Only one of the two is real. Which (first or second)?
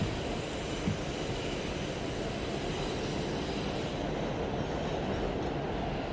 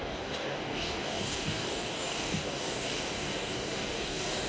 first